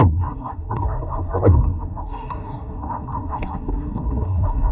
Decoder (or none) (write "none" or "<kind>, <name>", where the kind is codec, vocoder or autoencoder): codec, SNAC